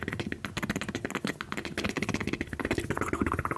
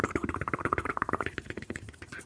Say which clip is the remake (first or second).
second